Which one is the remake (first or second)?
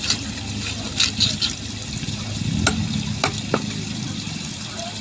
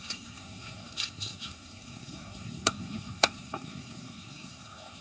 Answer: second